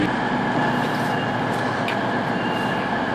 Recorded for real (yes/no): yes